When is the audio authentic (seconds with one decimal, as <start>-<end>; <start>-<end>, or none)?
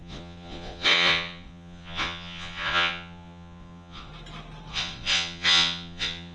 4.1-4.7